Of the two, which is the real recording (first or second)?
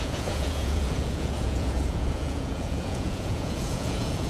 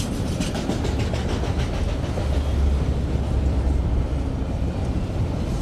second